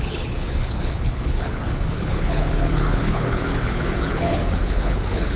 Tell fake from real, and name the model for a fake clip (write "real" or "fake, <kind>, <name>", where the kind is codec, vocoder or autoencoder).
fake, codec, HILCodec